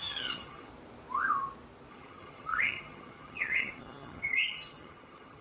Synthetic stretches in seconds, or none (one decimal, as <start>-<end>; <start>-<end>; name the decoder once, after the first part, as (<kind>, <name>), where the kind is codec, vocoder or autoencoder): 0.0-0.7 (vocoder, HiFi-GAN); 1.9-5.4